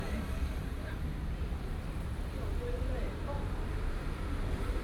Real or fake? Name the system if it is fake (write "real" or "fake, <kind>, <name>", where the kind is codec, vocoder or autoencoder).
fake, vocoder, BigVGAN v2